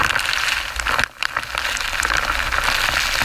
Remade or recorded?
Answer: recorded